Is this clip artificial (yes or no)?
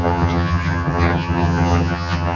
yes